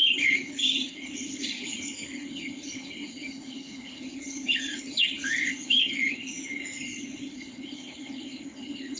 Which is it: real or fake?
fake